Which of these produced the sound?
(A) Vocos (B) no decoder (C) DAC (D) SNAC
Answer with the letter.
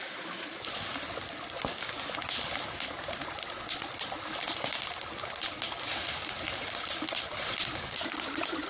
B